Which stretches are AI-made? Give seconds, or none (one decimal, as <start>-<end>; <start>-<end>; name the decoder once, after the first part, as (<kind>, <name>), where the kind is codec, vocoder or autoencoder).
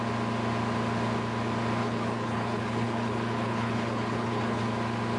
1.8-4.7 (codec, HILCodec)